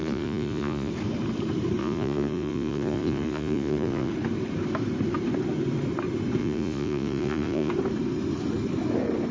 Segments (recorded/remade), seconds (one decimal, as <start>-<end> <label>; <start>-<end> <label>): 0.0-0.9 remade; 0.9-1.8 recorded; 1.8-4.1 remade; 4.1-6.4 recorded; 6.4-7.7 remade; 7.7-9.3 recorded